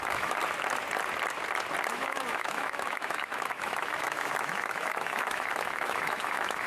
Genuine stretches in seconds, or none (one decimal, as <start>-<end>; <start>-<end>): 0.4-1.9

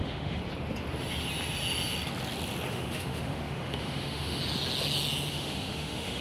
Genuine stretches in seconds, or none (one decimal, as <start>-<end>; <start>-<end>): 0.4-2.7; 4.4-5.3